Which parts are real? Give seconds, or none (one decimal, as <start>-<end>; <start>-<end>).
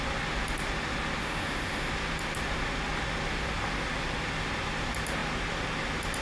0.0-1.2; 1.9-6.2